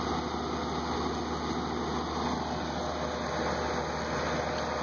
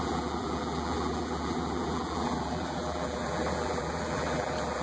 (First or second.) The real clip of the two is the first